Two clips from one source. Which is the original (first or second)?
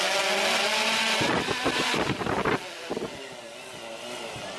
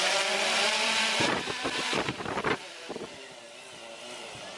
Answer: first